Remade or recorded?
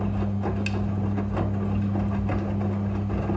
recorded